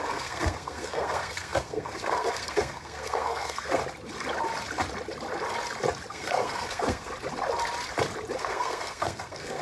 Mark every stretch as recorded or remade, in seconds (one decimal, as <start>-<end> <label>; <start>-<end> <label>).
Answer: 0.0-3.8 remade; 3.8-6.1 recorded; 6.1-7.1 remade; 7.1-8.4 recorded; 8.4-9.6 remade